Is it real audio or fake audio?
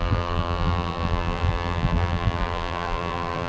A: fake